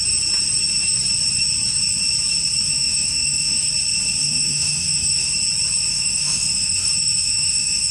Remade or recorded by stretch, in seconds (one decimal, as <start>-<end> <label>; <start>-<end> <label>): 0.0-2.7 recorded; 2.7-3.7 remade; 3.7-4.2 recorded; 4.2-5.3 remade; 5.3-5.9 recorded; 5.9-7.9 remade